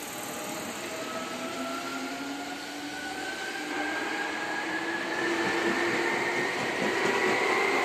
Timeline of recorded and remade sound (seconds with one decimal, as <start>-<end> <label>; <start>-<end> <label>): 0.0-7.8 recorded